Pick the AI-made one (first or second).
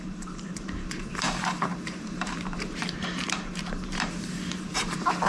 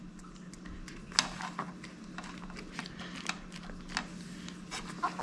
first